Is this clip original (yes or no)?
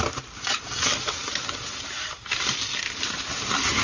yes